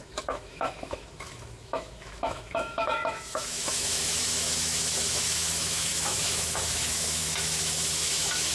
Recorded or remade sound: remade